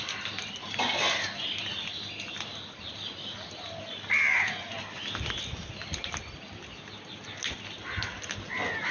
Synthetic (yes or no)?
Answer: no